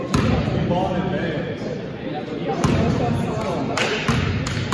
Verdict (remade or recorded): recorded